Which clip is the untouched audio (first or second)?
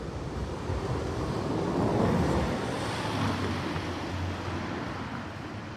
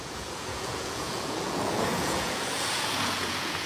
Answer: first